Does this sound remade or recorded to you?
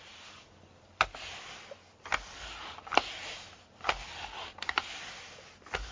remade